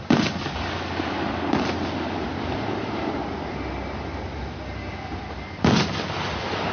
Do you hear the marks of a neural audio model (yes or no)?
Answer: no